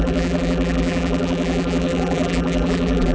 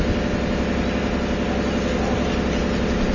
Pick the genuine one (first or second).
second